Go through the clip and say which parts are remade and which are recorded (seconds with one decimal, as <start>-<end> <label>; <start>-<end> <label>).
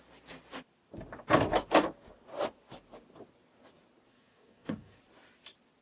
0.0-4.1 recorded; 4.1-5.0 remade; 5.0-5.8 recorded